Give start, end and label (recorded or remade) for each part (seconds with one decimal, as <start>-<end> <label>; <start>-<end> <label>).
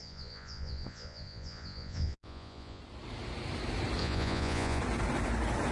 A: 0.0-2.8 remade; 2.8-4.0 recorded; 4.0-4.8 remade; 4.8-5.7 recorded